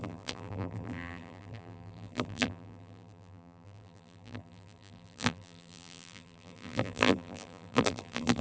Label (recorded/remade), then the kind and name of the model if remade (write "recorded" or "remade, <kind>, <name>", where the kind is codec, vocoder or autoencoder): remade, vocoder, BigVGAN v2